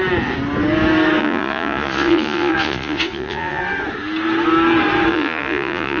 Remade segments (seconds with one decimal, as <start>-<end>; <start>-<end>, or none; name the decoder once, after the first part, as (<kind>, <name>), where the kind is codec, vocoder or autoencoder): 1.2-3.6 (vocoder, Vocos); 5.1-6.0